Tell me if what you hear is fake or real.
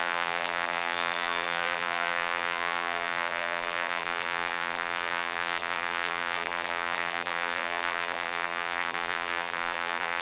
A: fake